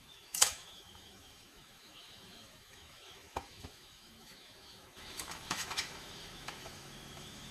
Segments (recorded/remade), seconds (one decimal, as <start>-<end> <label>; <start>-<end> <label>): 0.0-7.5 remade